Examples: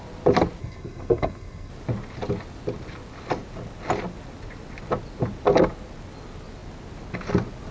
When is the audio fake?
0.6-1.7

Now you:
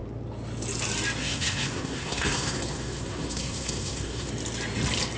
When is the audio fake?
1.2-4.3

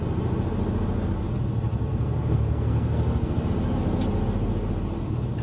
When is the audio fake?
1.9-3.5

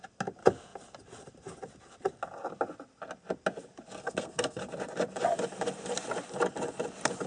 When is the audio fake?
4.0-4.6